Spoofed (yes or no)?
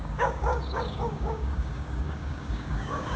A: yes